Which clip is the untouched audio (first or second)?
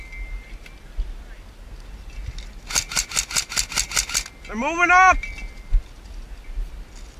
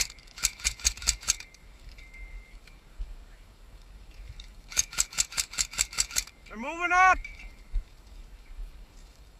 first